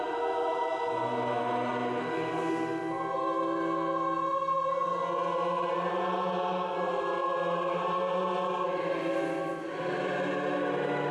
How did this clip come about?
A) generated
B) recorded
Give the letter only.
B